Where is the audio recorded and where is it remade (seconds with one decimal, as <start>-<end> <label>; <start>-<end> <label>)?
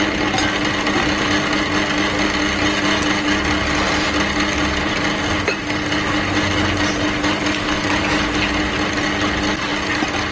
0.0-10.3 recorded